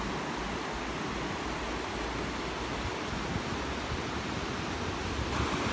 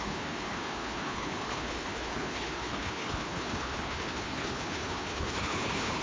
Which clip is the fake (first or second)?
second